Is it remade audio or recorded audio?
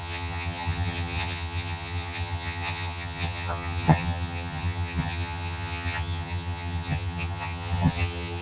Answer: remade